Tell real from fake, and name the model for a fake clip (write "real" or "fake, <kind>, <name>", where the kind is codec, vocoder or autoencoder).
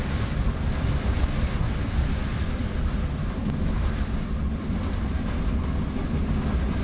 real